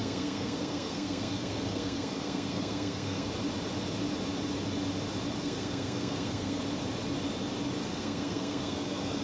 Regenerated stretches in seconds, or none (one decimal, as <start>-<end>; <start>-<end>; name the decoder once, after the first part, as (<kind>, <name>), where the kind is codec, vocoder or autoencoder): 0.0-3.3 (codec, SNAC); 5.4-6.6; 7.8-9.2